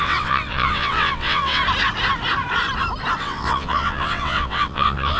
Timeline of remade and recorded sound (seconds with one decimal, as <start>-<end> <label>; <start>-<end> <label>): 0.0-1.6 remade; 1.6-3.2 recorded; 3.2-5.2 remade